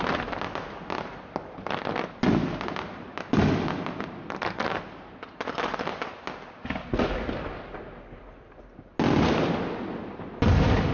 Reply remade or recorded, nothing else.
recorded